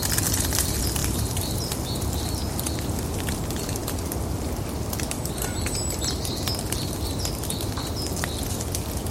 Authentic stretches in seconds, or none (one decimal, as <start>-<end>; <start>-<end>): 0.0-1.0; 1.7-9.1